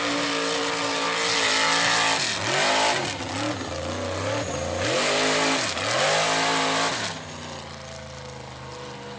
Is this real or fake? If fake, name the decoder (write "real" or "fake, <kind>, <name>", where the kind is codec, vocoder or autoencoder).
real